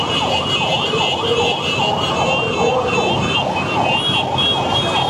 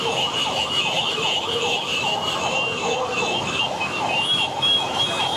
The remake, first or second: second